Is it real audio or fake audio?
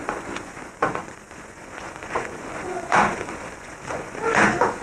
fake